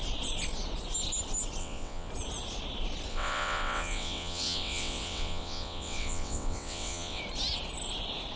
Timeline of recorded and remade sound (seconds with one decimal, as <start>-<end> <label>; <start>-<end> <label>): 0.0-1.6 recorded; 1.6-2.1 remade; 2.1-3.1 recorded; 3.1-7.2 remade; 7.2-8.4 recorded